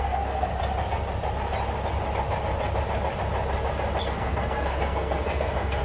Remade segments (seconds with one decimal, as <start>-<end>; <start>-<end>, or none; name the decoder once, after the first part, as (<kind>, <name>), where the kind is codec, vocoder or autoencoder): 0.0-0.5 (codec, SNAC); 4.0-5.8